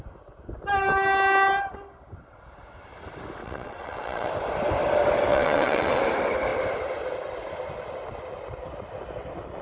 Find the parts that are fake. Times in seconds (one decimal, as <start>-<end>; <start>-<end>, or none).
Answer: 3.4-4.3; 5.3-6.0